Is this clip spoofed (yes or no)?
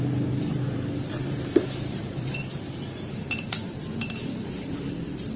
yes